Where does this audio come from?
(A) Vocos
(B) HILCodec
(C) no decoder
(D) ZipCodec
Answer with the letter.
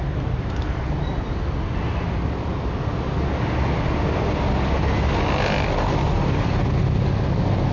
C